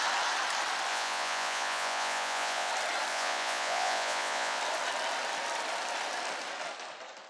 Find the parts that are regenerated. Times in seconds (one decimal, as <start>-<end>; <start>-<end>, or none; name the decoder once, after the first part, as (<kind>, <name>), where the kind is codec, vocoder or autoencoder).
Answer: 0.9-2.7 (vocoder, Vocos); 3.1-4.6